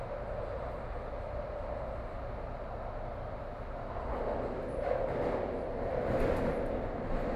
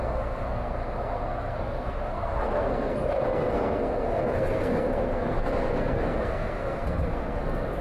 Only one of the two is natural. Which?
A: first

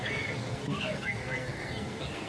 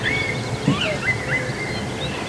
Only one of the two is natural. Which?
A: second